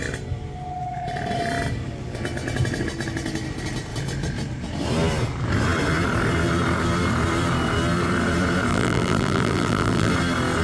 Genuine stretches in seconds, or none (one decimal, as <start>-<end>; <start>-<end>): 0.0-8.7; 10.1-10.6